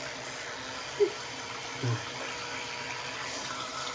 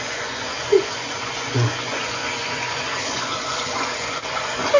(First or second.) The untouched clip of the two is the first